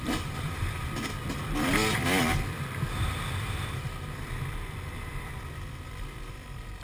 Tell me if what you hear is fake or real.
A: fake